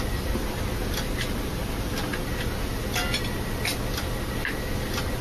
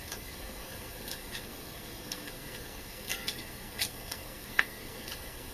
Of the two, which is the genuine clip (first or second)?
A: first